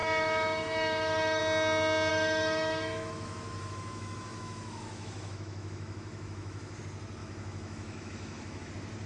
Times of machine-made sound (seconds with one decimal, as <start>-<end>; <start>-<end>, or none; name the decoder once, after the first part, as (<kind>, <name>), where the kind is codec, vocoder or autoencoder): 0.0-1.4 (autoencoder, DAC-VAE); 2.1-6.8; 7.2-8.7